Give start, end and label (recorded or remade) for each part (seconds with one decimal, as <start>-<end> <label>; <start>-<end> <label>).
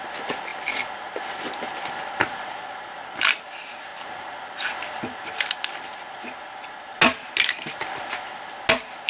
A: 0.0-9.1 recorded